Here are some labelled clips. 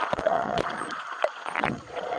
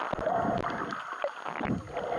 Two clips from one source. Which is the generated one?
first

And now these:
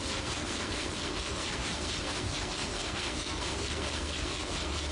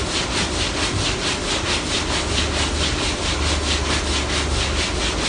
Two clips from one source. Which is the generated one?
first